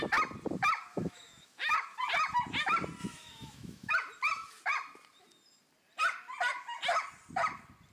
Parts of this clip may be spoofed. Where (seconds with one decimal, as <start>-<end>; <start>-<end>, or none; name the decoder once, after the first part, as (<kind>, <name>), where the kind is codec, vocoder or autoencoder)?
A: 0.9-1.7 (autoencoder, DAC-VAE); 3.0-3.9